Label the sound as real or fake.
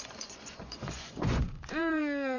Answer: fake